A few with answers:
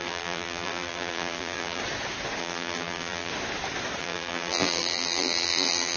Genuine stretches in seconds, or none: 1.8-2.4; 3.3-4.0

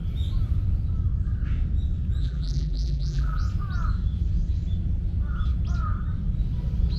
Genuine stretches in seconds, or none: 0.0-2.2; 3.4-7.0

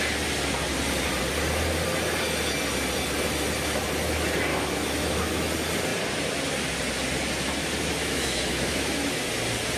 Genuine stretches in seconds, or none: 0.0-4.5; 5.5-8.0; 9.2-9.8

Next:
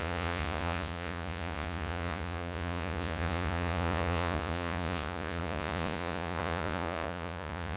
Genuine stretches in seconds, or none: none